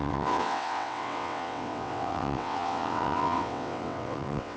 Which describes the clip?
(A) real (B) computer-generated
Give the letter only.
B